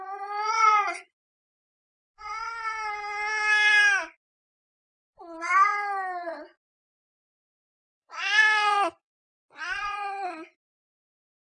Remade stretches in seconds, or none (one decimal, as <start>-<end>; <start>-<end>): 0.0-2.3; 4.6-11.5